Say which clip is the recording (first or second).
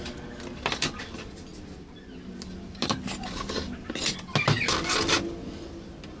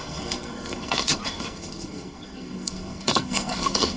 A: first